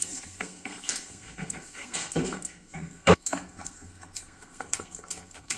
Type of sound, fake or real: fake